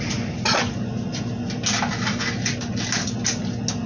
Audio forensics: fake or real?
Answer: real